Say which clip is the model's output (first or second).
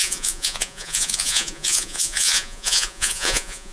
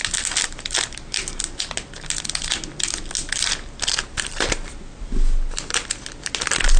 first